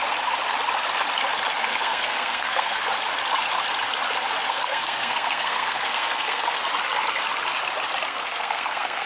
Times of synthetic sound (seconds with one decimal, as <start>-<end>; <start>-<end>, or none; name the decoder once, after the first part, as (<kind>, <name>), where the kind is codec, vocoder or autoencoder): 1.7-2.8 (codec, SNAC); 4.5-6.6; 8.1-9.1